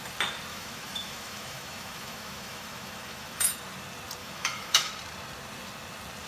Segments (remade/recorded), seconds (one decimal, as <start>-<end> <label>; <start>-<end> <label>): 0.0-0.5 recorded; 0.5-3.5 remade; 3.5-4.2 recorded; 4.2-4.9 remade; 4.9-6.3 recorded